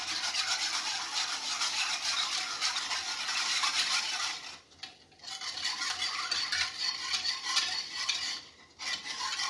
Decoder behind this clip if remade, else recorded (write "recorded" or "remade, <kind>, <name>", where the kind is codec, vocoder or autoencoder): recorded